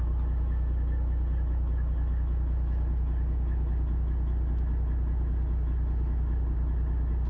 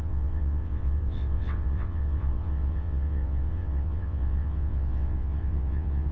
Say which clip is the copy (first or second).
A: second